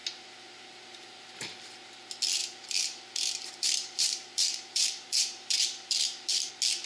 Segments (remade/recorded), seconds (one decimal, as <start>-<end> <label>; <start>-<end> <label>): 0.0-2.4 recorded; 2.4-6.5 remade; 6.5-6.9 recorded